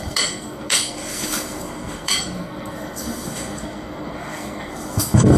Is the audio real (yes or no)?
no